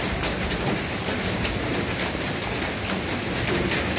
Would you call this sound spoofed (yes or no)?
no